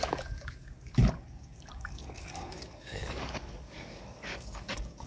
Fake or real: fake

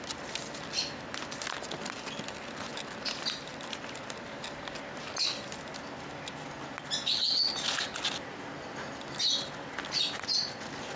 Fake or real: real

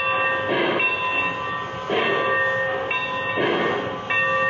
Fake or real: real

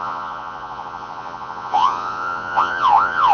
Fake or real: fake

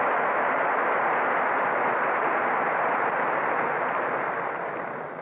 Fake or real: real